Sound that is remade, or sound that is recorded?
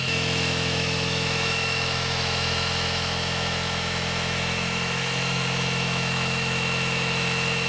remade